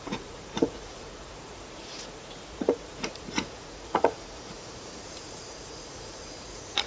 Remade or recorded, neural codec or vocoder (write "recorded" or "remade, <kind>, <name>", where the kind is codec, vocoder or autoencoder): remade, vocoder, Vocos